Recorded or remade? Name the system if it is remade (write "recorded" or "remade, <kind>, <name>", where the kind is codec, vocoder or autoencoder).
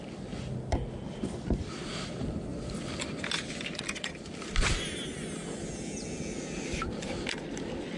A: recorded